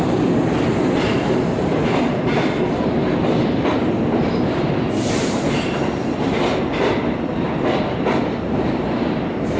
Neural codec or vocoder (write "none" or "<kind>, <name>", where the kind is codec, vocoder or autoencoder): none